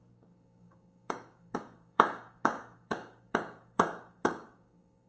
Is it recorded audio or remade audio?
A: remade